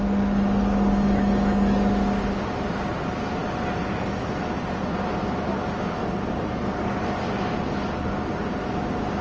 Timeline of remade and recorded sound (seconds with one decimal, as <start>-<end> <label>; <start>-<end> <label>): 0.0-9.2 recorded